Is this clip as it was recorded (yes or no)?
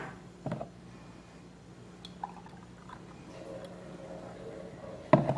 yes